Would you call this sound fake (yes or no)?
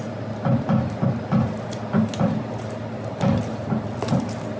no